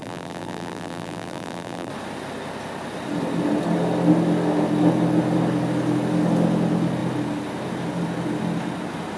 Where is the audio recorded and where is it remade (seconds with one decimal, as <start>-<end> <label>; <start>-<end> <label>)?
0.0-1.9 remade; 1.9-9.2 recorded